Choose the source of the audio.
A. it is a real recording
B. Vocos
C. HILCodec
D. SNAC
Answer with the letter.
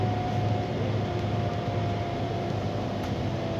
A